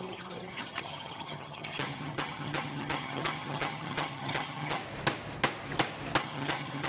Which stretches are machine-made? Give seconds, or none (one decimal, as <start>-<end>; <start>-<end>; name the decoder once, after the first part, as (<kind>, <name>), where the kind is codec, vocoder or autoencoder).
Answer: 0.0-4.8 (vocoder, HiFi-GAN); 6.2-6.9